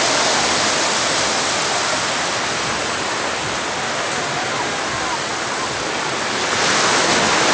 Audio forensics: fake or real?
real